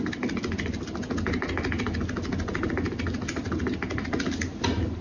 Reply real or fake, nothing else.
real